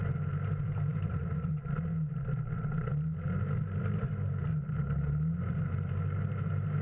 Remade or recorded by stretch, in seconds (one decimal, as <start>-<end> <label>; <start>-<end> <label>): 0.0-0.9 recorded; 0.9-1.5 remade; 1.5-6.8 recorded